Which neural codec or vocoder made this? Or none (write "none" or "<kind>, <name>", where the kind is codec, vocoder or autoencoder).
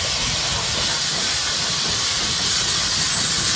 none